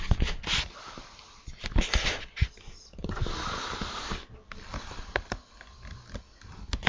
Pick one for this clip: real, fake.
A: real